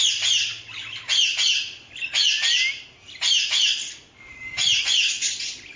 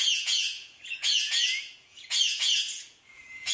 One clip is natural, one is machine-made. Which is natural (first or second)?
first